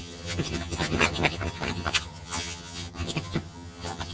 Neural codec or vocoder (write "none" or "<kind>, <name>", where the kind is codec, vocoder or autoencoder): vocoder, HiFi-GAN